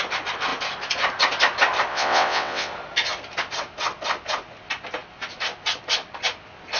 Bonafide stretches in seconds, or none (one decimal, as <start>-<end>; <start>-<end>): 0.0-1.9; 2.7-6.8